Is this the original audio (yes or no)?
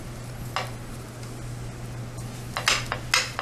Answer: yes